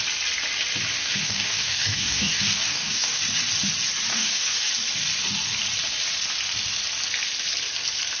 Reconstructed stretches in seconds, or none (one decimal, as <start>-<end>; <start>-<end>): 1.0-3.2; 4.1-4.7